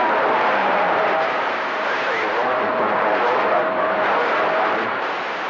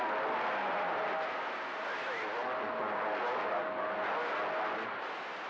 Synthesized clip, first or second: first